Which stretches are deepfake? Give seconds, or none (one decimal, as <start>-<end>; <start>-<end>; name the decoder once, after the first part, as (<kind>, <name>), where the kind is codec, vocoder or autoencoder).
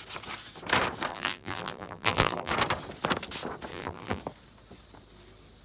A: 1.1-2.5 (vocoder, BigVGAN v2); 3.7-4.2